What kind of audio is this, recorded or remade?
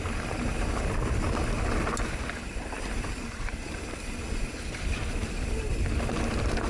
recorded